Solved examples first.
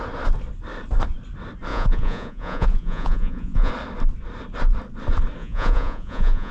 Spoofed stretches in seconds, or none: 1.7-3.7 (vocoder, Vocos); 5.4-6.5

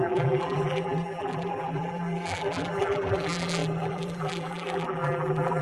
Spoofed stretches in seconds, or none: 0.0-5.6 (vocoder, BigVGAN v2)

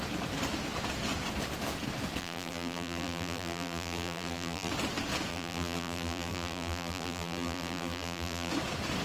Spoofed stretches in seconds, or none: 2.2-4.7 (vocoder, BigVGAN v2); 5.3-8.5

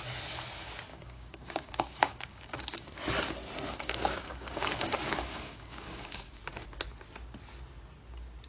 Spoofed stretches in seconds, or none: 0.9-3.0 (codec, DAC); 3.7-6.4

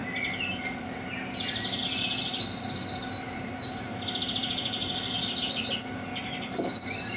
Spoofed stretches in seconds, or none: none

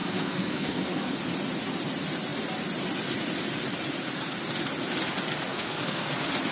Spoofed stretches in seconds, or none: 0.0-1.1 (codec, SNAC); 5.5-6.1